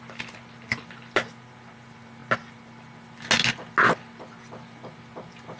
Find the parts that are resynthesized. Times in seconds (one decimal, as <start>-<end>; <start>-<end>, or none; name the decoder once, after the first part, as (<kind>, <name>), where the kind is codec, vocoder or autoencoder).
none